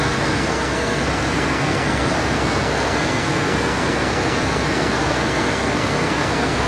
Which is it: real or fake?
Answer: fake